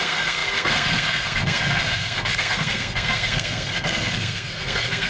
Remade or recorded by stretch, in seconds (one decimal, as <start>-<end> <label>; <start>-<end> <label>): 0.0-5.1 remade